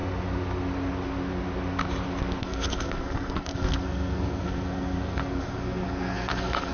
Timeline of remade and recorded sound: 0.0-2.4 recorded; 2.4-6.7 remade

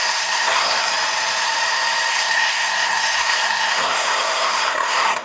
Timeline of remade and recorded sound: 0.0-0.9 remade; 0.9-2.1 recorded; 2.1-5.2 remade

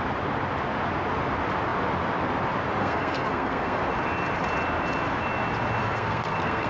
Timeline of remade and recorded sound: 0.0-2.8 recorded; 2.8-3.9 remade; 3.9-5.8 recorded; 5.8-6.7 remade

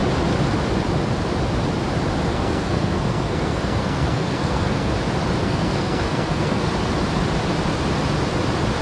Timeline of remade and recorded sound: 0.0-2.3 recorded; 2.3-4.9 remade; 4.9-5.4 recorded; 5.4-6.7 remade; 6.7-8.8 recorded

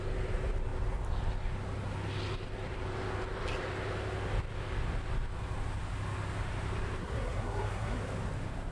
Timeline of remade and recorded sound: 0.0-7.0 recorded; 7.0-8.0 remade; 8.0-8.7 recorded